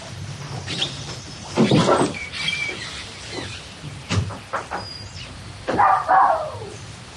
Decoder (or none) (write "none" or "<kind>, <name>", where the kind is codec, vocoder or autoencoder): vocoder, BigVGAN v2